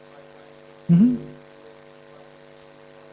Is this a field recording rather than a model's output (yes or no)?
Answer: yes